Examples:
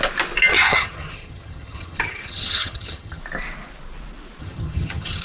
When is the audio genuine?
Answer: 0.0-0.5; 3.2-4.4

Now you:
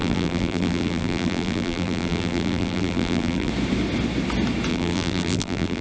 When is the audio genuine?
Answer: 3.5-4.7

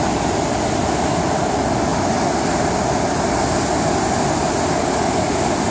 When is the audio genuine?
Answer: 0.0-5.7

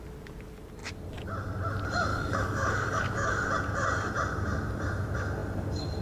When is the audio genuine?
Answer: 0.0-2.1; 3.5-6.0

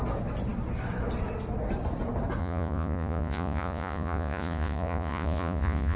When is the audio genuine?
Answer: 0.0-2.4

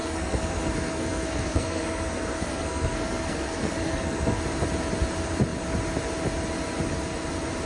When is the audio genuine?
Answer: 4.4-7.7

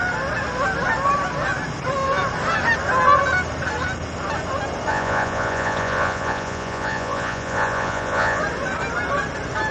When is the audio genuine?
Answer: 0.0-4.9; 8.4-9.7

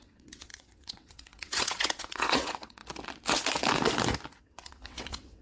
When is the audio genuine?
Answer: 2.8-4.4